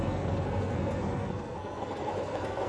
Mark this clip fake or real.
fake